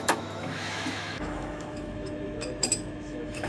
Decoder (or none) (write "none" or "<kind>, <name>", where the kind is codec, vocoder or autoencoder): autoencoder, DAC-VAE